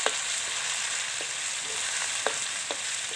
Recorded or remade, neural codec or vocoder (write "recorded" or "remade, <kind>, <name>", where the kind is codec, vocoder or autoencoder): recorded